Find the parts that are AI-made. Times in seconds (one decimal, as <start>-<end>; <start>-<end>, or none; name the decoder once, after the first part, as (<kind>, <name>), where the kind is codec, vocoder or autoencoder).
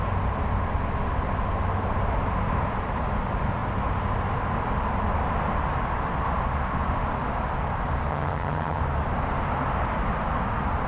8.1-8.8 (vocoder, HiFi-GAN)